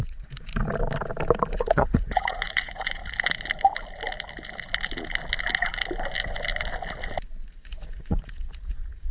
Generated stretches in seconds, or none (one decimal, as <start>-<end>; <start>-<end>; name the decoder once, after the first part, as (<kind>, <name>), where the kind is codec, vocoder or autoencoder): 0.0-0.5 (vocoder, Vocos); 1.5-3.0; 7.5-9.1